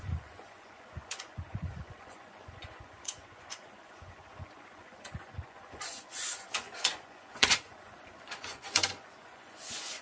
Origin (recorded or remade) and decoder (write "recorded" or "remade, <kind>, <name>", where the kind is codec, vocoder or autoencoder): remade, vocoder, Vocos